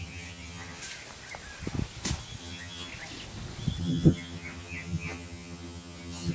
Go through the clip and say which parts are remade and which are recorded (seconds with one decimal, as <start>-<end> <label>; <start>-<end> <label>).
0.0-0.8 remade; 0.8-2.4 recorded; 2.4-2.9 remade; 2.9-3.8 recorded; 3.8-6.3 remade